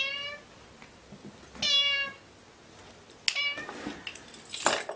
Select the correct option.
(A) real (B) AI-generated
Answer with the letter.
A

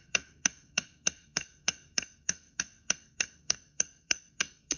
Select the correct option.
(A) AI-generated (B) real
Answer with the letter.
A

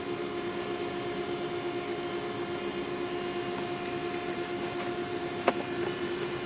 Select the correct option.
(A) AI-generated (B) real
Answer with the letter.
B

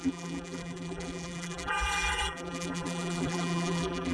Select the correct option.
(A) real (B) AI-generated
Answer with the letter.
B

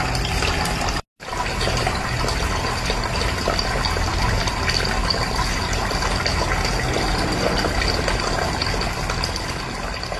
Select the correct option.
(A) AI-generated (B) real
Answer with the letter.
B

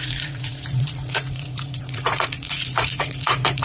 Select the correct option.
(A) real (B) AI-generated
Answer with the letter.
B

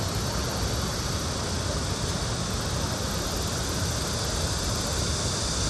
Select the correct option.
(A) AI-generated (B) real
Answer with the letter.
B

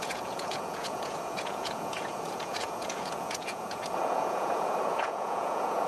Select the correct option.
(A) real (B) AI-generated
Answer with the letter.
B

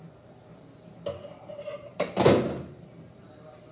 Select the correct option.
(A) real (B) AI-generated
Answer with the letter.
B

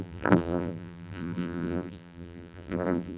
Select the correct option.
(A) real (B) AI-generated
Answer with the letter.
B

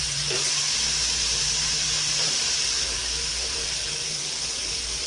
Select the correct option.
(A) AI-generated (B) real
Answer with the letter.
A